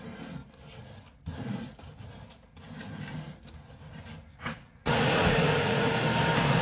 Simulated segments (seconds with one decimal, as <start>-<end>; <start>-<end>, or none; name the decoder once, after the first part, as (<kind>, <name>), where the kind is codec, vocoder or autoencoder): 4.4-5.9 (vocoder, Vocos)